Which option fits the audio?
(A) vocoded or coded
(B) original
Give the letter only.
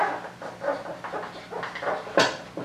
B